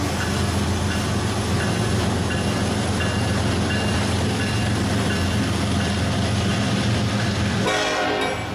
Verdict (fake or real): real